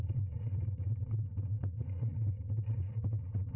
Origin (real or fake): fake